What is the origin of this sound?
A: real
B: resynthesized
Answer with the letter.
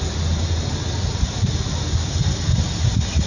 A